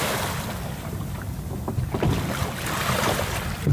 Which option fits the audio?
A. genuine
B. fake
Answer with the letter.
A